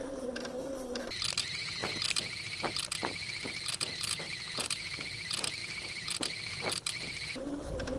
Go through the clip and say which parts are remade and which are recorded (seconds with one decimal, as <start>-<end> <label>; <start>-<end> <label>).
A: 0.0-8.0 recorded